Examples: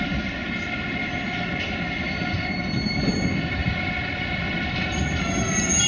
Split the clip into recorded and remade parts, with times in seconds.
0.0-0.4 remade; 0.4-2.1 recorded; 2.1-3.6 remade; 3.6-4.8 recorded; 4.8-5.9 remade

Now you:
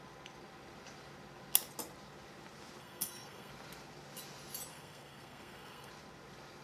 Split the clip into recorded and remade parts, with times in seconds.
0.0-2.8 recorded; 2.8-3.5 remade; 3.5-4.7 recorded; 4.7-5.9 remade; 5.9-6.6 recorded

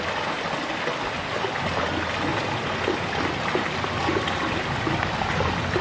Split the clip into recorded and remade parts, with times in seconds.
0.0-5.8 recorded

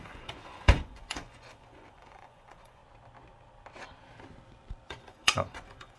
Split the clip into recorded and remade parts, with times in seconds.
0.0-2.8 remade; 2.8-4.9 recorded; 4.9-6.0 remade

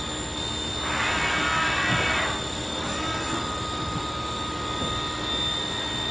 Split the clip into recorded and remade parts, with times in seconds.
0.0-6.1 recorded